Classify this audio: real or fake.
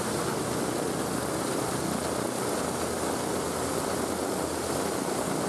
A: real